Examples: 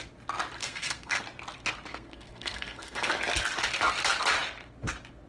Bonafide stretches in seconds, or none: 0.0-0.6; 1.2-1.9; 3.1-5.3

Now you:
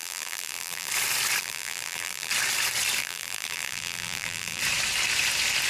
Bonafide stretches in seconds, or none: 0.9-1.4; 2.3-3.0; 4.6-5.7